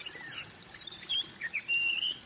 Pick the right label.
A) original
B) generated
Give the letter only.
A